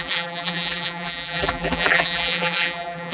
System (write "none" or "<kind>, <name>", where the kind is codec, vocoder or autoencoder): vocoder, BigVGAN v2